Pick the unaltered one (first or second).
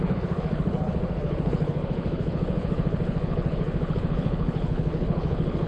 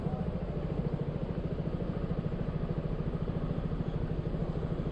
second